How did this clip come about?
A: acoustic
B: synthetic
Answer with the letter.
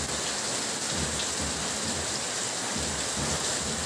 A